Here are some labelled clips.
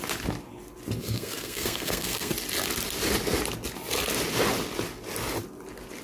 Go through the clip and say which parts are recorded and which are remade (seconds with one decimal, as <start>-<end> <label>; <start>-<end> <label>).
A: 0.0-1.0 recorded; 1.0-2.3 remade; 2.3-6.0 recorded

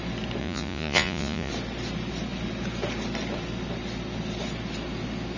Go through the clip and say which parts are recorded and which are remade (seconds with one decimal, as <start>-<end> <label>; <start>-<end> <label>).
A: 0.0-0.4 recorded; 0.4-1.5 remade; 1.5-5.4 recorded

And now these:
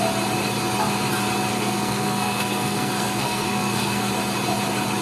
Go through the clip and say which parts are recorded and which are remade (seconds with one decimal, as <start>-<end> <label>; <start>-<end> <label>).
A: 0.0-1.5 recorded; 1.5-4.1 remade; 4.1-5.0 recorded

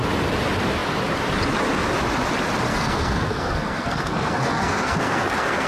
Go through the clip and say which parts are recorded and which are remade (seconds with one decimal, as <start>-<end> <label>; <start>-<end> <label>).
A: 0.0-2.7 recorded; 2.7-5.7 remade

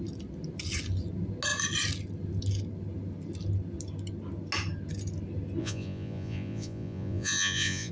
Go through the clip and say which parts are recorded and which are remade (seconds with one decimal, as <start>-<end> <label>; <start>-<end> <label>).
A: 0.0-5.6 recorded; 5.6-7.9 remade

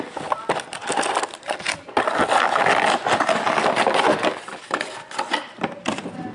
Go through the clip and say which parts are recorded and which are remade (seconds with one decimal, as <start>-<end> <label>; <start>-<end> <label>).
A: 0.0-6.3 recorded